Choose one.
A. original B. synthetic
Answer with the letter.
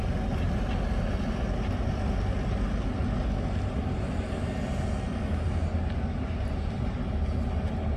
A